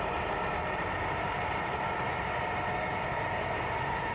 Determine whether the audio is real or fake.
real